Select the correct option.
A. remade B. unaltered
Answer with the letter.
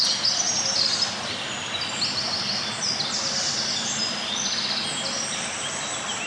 B